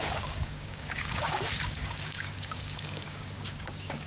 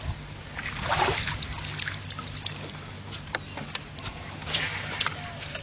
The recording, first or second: second